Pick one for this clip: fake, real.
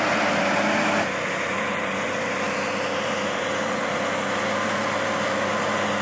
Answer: real